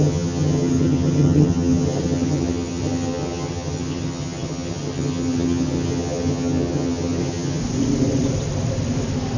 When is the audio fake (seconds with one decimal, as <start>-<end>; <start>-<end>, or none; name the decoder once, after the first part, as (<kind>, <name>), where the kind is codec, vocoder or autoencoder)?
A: 0.0-7.6 (vocoder, HiFi-GAN)